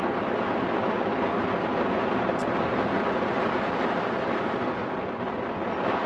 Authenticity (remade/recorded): recorded